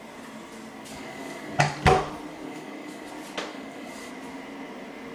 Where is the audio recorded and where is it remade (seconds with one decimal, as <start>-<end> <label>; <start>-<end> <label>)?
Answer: 0.0-0.9 recorded; 0.9-1.6 remade; 1.6-2.3 recorded; 2.3-3.1 remade; 3.1-3.5 recorded; 3.5-4.1 remade; 4.1-5.1 recorded